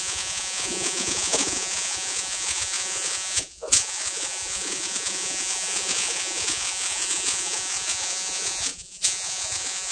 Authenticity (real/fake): fake